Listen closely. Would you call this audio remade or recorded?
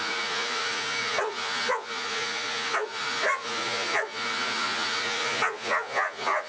remade